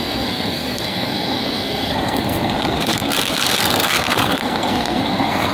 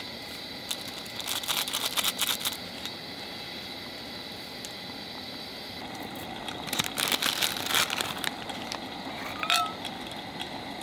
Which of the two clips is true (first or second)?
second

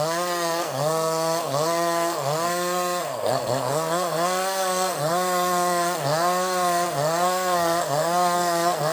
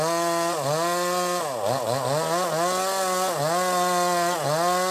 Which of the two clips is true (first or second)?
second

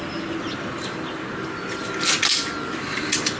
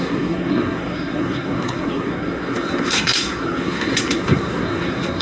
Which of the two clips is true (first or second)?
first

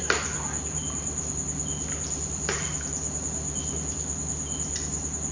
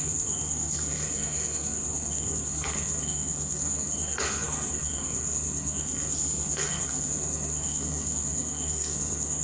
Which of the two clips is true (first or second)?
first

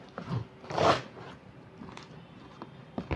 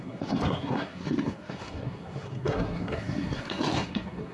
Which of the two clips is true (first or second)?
first